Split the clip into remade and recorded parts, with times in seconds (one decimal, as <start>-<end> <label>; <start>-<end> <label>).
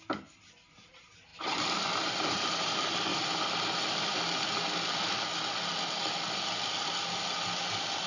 0.0-1.3 recorded; 1.3-2.7 remade; 2.7-3.1 recorded; 3.1-3.8 remade; 3.8-8.1 recorded